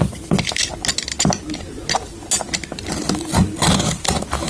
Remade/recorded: recorded